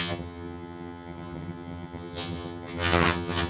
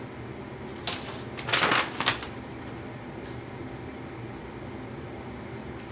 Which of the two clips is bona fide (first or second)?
second